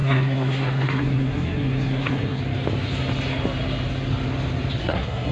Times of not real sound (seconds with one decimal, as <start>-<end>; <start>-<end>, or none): 0.0-2.4; 4.8-5.3

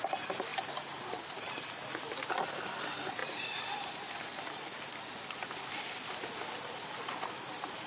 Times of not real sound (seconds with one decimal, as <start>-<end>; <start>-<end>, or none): 0.5-1.2; 3.2-7.4